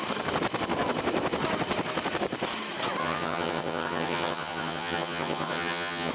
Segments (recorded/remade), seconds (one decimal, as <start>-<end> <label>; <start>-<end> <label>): 0.0-3.0 recorded; 3.0-6.1 remade